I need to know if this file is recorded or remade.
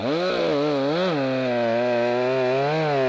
recorded